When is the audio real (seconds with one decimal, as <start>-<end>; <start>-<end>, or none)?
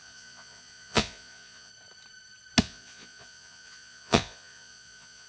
1.7-2.6